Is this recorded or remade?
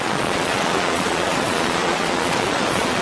remade